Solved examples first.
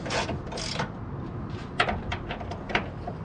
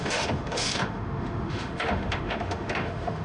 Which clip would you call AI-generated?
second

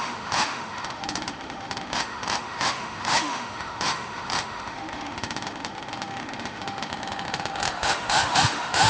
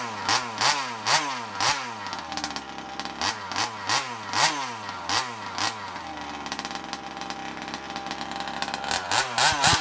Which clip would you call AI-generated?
first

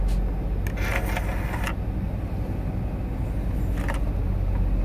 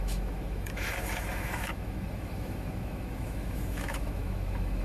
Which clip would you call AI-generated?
second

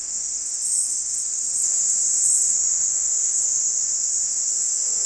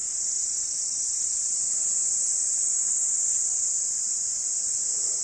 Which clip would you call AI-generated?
first